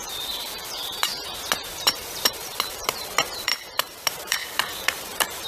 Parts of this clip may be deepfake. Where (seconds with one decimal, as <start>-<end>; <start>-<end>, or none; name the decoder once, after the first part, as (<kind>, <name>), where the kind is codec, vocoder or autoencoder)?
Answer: 0.0-1.1 (vocoder, BigVGAN v2); 1.7-5.5